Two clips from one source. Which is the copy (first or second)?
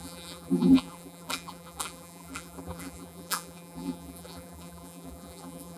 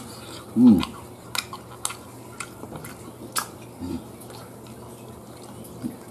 first